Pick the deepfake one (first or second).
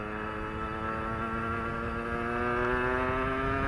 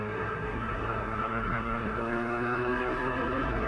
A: second